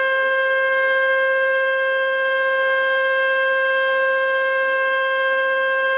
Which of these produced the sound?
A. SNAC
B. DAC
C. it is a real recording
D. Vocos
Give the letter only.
B